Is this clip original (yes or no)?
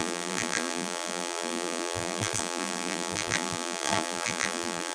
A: no